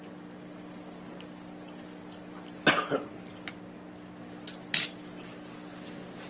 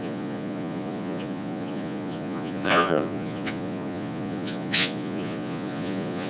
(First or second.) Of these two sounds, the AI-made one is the second